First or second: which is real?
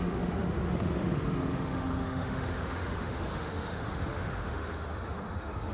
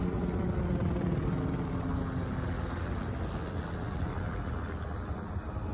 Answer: second